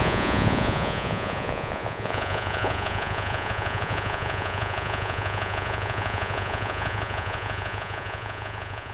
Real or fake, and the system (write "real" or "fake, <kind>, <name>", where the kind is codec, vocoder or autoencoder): fake, vocoder, Vocos